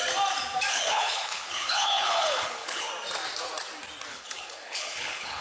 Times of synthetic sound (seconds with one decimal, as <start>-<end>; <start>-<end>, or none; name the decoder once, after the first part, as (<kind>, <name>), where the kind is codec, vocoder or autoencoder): 0.7-2.9 (codec, HILCodec); 4.1-5.4